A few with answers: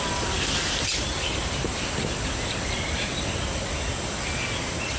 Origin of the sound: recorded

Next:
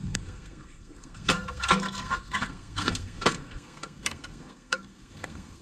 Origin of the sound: remade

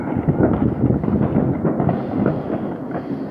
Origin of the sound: recorded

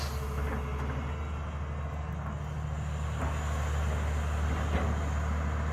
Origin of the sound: recorded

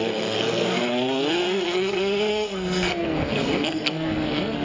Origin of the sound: remade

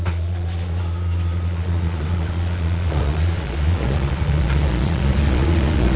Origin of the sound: remade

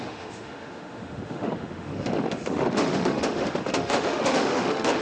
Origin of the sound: remade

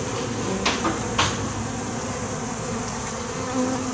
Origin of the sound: recorded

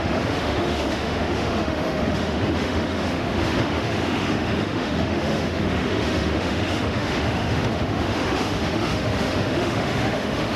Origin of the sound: remade